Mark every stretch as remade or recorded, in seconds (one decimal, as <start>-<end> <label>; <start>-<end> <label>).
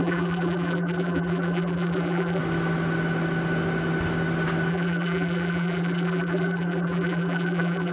0.0-2.4 remade; 2.4-4.7 recorded; 4.7-7.9 remade